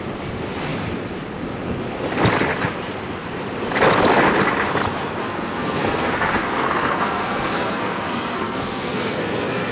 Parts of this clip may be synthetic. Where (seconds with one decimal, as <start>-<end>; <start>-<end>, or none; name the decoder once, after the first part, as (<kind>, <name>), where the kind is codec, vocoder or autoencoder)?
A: 5.2-9.7 (codec, SNAC)